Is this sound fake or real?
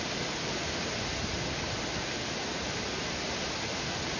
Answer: real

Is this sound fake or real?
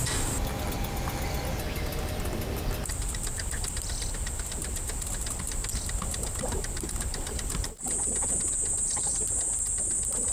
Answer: real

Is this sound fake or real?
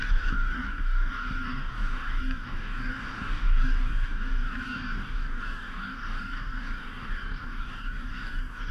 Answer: fake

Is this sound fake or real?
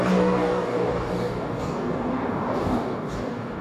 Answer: fake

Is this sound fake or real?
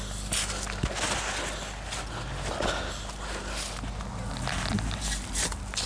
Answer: real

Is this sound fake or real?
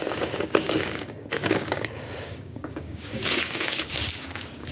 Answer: fake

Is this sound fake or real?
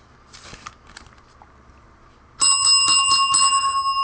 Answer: real